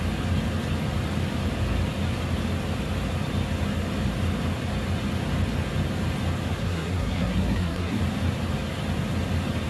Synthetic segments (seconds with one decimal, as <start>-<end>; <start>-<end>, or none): 6.6-8.0